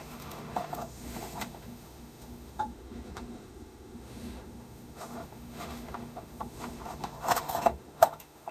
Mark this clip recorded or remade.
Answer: remade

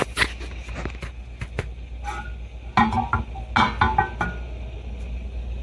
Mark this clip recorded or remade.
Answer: recorded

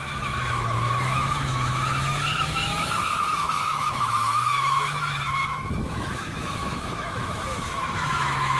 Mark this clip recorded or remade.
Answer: remade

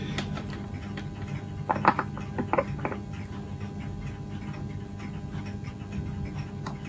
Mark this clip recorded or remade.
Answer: recorded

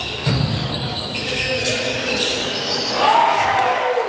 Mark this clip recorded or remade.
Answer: remade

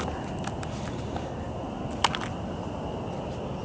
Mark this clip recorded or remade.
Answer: recorded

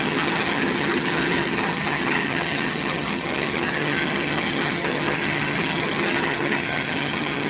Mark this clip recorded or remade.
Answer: remade